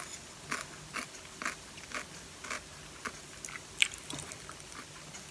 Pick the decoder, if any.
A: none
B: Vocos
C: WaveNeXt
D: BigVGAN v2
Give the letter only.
A